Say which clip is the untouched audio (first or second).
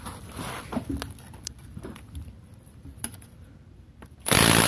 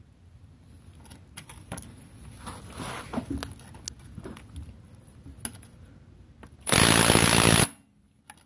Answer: second